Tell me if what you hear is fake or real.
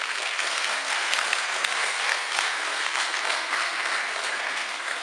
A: fake